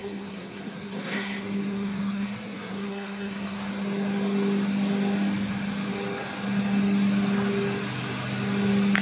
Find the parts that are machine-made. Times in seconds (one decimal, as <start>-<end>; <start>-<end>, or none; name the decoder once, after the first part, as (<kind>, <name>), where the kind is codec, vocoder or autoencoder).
0.0-3.7 (codec, SNAC)